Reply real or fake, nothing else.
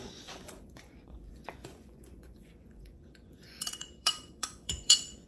fake